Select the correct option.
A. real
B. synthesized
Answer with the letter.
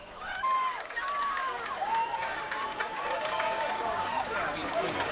B